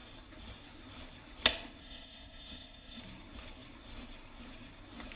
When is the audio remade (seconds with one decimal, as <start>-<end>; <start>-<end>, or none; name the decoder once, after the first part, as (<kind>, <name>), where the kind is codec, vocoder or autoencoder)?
1.8-3.0 (codec, SNAC)